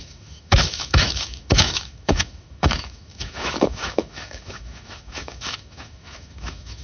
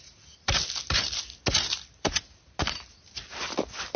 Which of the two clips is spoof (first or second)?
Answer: first